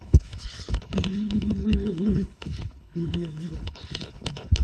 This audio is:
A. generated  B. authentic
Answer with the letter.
A